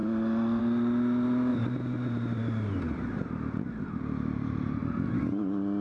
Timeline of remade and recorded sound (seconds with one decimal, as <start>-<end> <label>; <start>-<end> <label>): 0.0-1.5 recorded; 1.5-3.4 remade; 3.4-5.8 recorded